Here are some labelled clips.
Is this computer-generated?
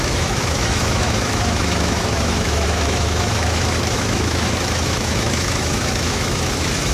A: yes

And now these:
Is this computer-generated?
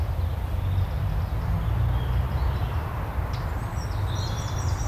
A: no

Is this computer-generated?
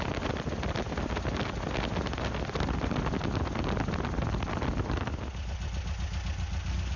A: no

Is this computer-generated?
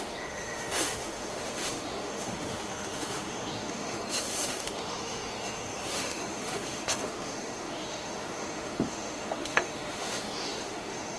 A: yes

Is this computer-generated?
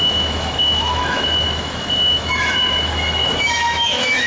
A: yes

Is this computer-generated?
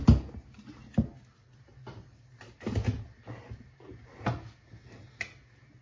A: no